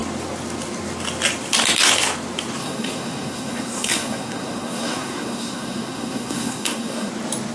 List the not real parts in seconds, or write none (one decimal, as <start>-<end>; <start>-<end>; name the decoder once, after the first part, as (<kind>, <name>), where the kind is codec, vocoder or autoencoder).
2.6-7.1 (codec, SNAC)